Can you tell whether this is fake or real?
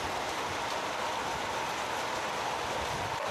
real